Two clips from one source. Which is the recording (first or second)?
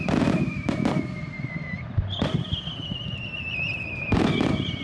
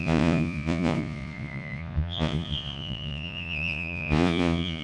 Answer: first